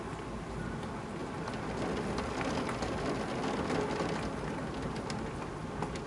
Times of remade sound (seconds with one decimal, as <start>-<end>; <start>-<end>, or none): none